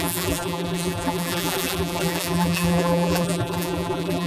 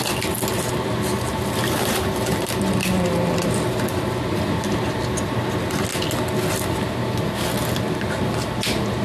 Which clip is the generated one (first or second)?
first